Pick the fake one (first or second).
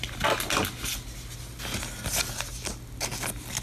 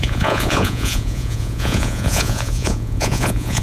second